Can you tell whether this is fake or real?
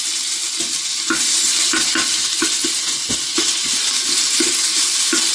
real